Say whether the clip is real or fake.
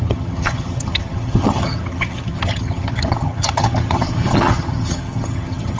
fake